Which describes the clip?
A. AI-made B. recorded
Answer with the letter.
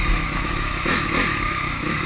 A